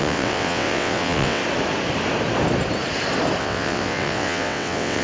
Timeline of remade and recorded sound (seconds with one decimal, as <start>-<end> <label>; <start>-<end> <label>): 0.0-1.4 remade; 1.4-3.4 recorded; 3.4-5.0 remade